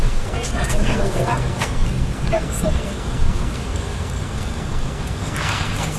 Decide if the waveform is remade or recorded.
remade